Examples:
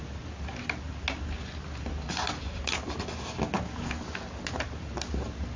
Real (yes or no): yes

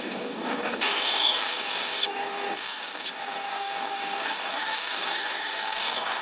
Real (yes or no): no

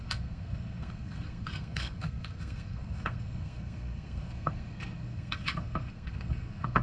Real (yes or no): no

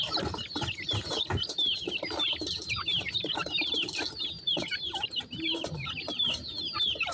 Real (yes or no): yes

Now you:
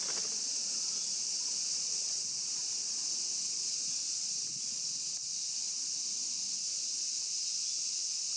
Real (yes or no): yes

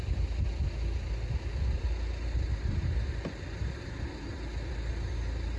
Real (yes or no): yes